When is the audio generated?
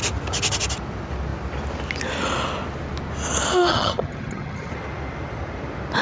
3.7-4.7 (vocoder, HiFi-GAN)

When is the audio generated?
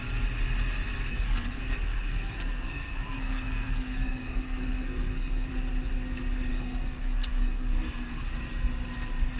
1.1-5.5 (codec, SNAC); 6.5-8.2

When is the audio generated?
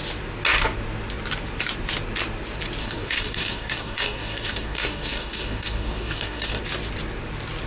2.8-6.6 (codec, DAC)